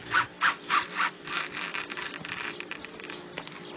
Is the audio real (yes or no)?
yes